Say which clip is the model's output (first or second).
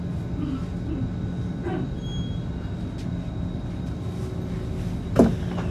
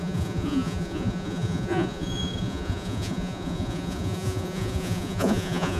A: second